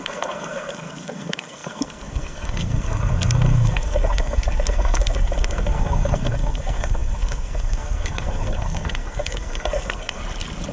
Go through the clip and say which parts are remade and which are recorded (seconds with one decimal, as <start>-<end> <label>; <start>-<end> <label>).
0.0-10.2 remade; 10.2-10.7 recorded